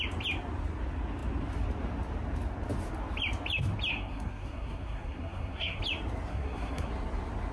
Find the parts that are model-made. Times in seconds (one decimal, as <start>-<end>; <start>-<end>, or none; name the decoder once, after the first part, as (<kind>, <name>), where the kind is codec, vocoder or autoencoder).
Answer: 3.9-5.8 (codec, SNAC); 6.3-6.9